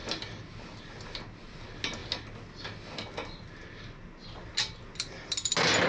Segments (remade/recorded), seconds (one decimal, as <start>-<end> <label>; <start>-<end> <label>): 0.0-5.9 recorded